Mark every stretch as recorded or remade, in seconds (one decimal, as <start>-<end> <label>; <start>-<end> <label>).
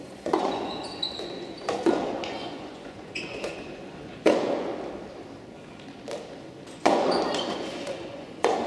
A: 0.0-4.7 remade; 4.7-6.7 recorded; 6.7-8.7 remade